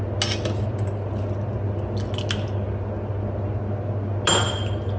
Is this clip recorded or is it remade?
recorded